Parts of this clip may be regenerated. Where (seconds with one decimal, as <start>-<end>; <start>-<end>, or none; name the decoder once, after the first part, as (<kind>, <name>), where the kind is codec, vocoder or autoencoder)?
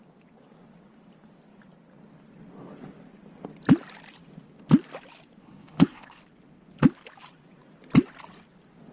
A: 5.4-6.2 (codec, HILCodec)